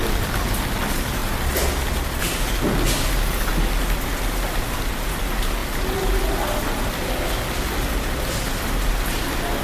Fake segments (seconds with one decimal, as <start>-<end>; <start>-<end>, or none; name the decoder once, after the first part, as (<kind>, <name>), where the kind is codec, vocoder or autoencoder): none